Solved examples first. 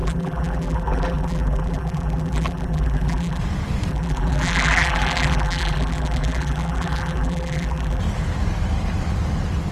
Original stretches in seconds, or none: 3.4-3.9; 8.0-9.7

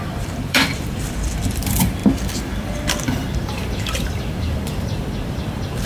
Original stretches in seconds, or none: 2.0-2.6

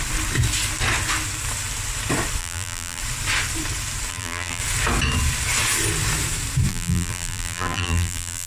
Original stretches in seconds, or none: 0.0-2.4; 3.0-4.1; 4.6-6.7